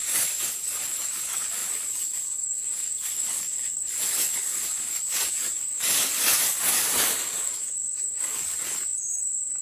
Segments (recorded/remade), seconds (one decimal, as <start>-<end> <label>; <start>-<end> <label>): 0.0-9.6 remade